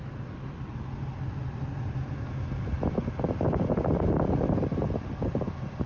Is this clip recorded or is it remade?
recorded